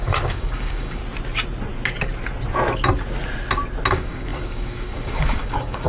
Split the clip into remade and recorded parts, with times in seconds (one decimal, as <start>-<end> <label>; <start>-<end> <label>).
0.0-1.0 remade; 1.0-3.9 recorded; 3.9-5.9 remade